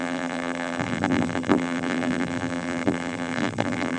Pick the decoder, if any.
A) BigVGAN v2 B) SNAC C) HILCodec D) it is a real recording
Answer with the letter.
A